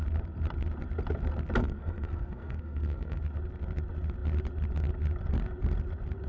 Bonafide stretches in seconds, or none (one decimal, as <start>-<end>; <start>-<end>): 0.0-1.6; 3.2-6.3